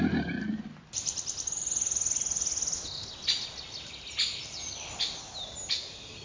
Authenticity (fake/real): real